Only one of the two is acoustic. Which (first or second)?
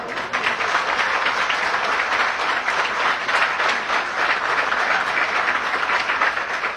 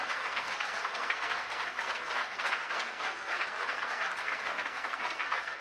first